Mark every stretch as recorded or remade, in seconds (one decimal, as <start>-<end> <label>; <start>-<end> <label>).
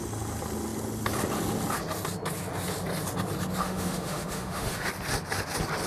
0.0-3.6 recorded; 3.6-4.9 remade; 4.9-5.9 recorded